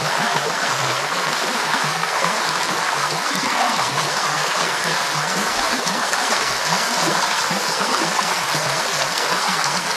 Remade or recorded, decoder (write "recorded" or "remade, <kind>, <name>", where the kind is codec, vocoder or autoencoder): remade, codec, SNAC